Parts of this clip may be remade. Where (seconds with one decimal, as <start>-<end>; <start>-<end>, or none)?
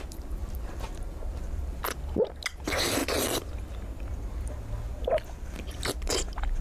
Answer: 0.0-1.8; 2.6-3.0